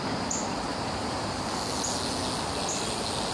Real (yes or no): yes